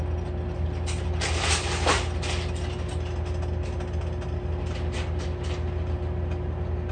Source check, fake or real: real